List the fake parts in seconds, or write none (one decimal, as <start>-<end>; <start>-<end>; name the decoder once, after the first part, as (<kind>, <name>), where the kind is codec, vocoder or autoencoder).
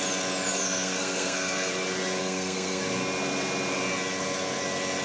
0.5-1.7 (codec, SNAC); 2.2-2.8